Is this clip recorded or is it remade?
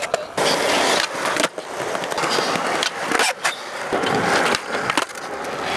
recorded